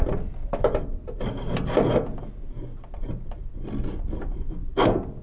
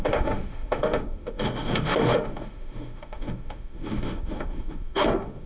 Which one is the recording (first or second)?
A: first